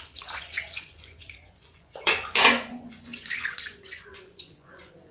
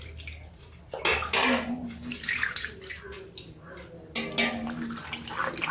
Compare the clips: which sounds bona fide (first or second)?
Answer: second